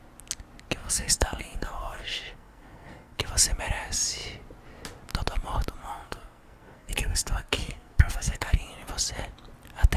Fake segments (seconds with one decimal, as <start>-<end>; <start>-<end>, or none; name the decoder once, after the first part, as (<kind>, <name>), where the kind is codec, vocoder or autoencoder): 0.8-3.2 (codec, SNAC); 5.8-8.6